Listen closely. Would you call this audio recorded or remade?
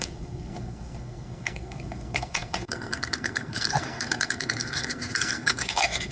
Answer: remade